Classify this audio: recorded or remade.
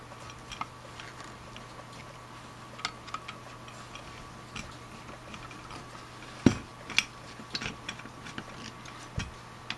recorded